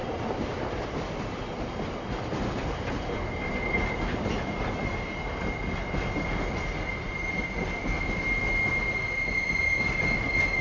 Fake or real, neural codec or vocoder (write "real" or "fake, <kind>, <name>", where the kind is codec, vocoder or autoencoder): real